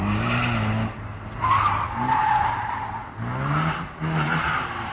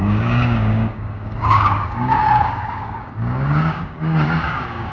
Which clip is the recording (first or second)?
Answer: first